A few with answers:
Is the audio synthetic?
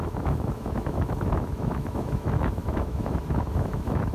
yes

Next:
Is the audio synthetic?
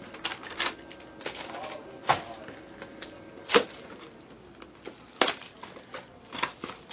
no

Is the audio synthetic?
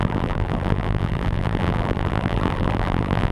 yes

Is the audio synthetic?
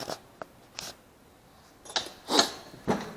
no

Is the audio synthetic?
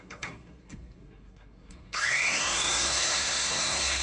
yes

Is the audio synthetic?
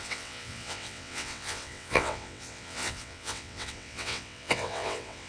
yes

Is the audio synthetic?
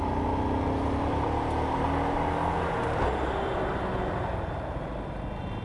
no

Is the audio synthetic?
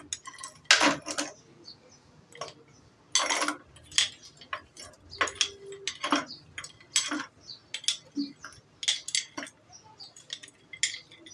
no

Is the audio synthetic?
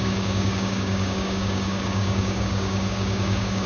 yes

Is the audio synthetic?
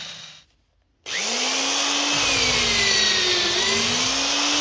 no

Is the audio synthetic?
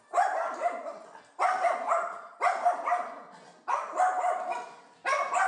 no